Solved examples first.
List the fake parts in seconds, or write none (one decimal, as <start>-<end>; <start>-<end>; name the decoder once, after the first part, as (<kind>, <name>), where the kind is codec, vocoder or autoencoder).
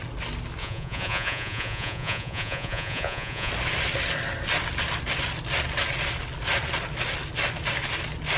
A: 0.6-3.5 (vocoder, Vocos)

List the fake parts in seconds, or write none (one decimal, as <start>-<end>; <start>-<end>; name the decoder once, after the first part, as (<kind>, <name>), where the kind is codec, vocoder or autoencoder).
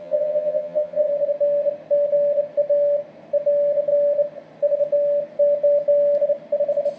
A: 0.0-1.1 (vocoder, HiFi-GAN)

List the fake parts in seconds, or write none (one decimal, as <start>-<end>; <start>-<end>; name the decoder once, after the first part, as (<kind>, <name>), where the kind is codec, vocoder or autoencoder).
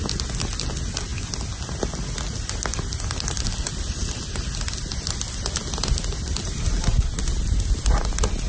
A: none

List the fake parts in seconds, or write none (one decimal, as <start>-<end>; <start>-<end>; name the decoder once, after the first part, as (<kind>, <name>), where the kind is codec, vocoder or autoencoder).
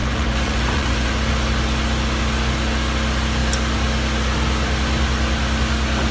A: 0.0-1.1 (vocoder, Vocos)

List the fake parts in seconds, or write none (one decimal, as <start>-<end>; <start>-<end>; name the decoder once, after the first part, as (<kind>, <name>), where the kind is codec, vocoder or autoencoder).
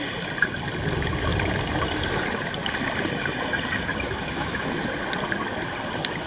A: 3.9-4.8 (autoencoder, DAC-VAE)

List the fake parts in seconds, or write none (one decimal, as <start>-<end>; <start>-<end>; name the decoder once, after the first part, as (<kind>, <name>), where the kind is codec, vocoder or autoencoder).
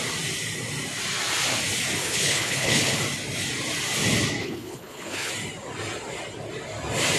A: 2.0-3.0 (codec, HILCodec); 4.4-5.3